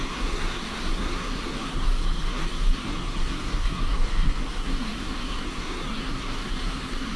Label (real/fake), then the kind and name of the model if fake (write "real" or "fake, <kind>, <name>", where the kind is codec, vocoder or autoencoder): fake, codec, SNAC